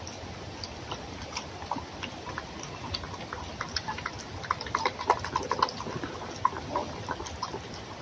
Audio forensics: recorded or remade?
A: recorded